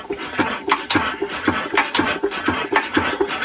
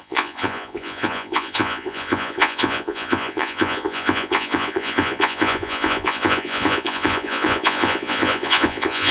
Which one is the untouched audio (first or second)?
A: first